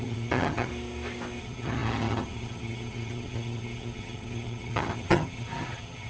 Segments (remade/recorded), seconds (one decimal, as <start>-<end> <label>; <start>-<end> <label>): 0.0-0.7 remade; 0.7-1.4 recorded; 1.4-6.1 remade